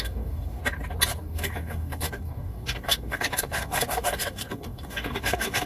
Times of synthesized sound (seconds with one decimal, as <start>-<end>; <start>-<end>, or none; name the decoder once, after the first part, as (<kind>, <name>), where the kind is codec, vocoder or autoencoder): 0.0-0.6 (codec, DAC); 1.2-5.7